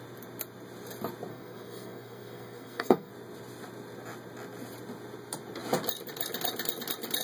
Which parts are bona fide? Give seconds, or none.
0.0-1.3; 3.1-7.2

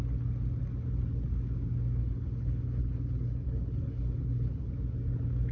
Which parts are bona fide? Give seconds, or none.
0.0-2.0; 4.7-5.5

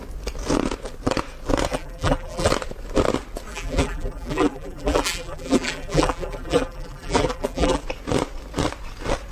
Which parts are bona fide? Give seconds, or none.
0.0-1.7; 2.5-3.5; 7.8-9.3

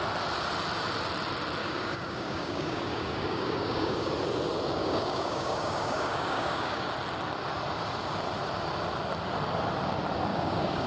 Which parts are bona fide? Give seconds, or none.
0.0-1.6; 4.1-4.8; 6.9-10.3

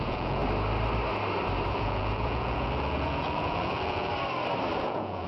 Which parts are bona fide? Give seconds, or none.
0.4-1.7; 4.1-4.8

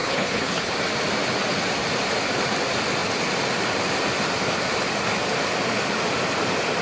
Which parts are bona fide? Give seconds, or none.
0.7-6.8

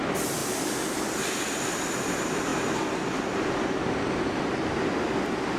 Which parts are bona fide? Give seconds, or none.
2.5-4.4